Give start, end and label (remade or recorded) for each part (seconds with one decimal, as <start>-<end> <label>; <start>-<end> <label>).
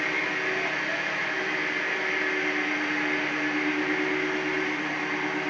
0.0-0.9 recorded; 0.9-1.4 remade; 1.4-5.5 recorded